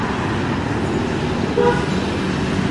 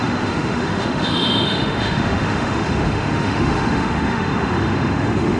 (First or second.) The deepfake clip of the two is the second